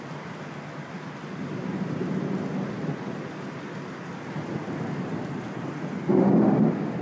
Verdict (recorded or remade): recorded